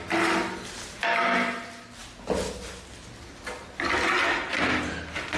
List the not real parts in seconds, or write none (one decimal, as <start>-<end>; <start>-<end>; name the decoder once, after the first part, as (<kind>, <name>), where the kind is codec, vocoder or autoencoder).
none